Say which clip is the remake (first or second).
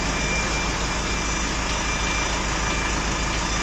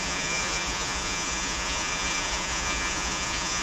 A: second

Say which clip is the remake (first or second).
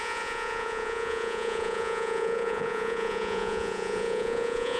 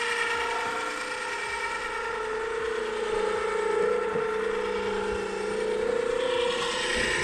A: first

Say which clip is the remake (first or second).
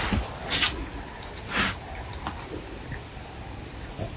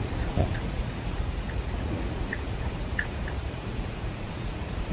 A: second